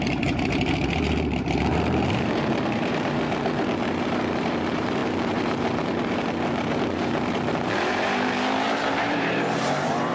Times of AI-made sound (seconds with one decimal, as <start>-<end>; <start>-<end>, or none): 0.0-10.1